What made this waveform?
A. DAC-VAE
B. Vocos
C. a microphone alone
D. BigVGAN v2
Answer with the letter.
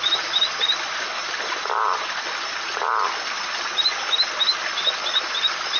C